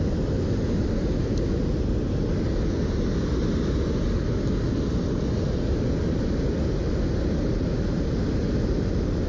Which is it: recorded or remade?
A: recorded